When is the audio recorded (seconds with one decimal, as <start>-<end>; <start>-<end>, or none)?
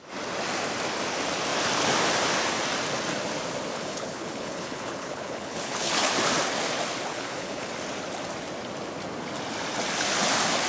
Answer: 0.0-3.7; 6.1-7.1; 7.7-10.7